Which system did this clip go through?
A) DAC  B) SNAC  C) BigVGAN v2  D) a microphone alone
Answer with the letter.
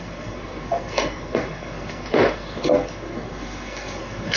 B